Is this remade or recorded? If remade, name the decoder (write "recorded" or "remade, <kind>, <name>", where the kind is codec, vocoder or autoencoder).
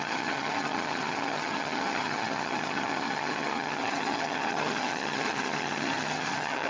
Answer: remade, vocoder, HiFi-GAN